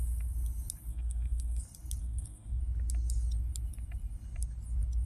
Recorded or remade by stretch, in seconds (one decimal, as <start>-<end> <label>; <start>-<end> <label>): 0.0-0.9 recorded; 0.9-1.6 remade; 1.6-2.0 recorded; 2.0-2.6 remade; 2.6-5.0 recorded